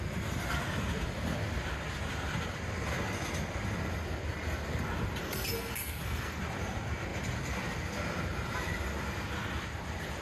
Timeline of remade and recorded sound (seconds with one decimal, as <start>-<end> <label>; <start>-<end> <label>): 0.0-5.2 recorded; 5.2-6.4 remade; 6.4-10.2 recorded